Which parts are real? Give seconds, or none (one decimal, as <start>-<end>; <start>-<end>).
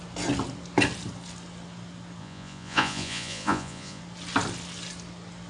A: 0.0-2.2; 4.0-5.5